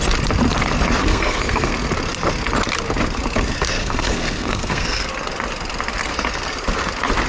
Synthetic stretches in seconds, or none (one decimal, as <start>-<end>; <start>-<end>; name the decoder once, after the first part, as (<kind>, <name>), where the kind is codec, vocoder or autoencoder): 1.0-1.7 (codec, SNAC); 3.8-5.1